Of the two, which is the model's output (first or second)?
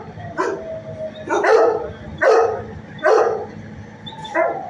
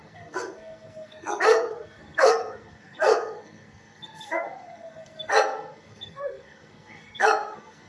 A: second